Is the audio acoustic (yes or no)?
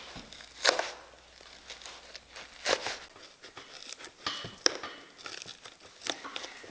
yes